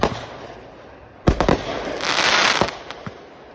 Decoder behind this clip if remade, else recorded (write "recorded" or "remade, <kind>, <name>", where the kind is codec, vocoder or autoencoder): recorded